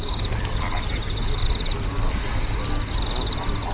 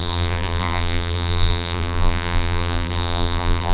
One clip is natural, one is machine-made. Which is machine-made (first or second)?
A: second